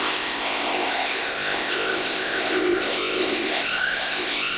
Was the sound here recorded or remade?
remade